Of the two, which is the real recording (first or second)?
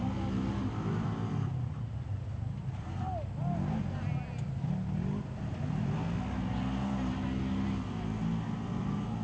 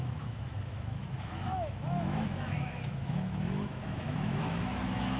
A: first